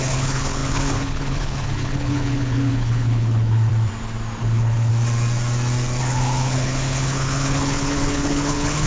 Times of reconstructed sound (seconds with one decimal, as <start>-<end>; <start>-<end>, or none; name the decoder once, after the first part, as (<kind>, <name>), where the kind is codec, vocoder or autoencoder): 0.0-3.7 (codec, HILCodec); 4.4-4.9; 6.0-8.9